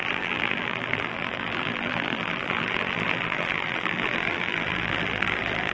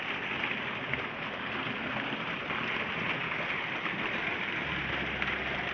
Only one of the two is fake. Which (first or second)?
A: first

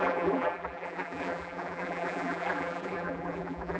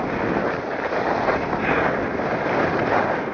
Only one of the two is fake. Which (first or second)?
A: first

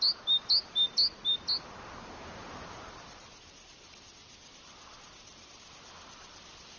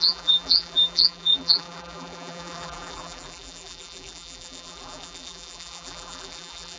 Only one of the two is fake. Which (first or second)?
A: second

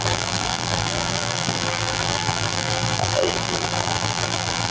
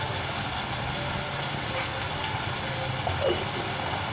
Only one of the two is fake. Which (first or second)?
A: first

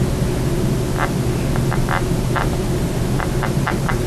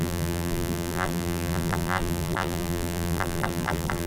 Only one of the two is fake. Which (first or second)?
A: second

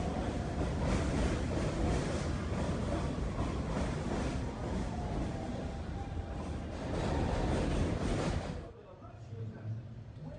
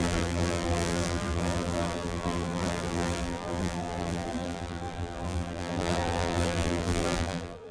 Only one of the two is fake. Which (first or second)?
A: second